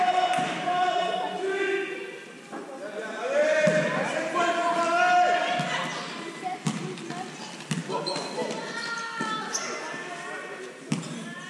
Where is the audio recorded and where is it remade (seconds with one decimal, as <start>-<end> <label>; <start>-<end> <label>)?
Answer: 0.0-11.5 recorded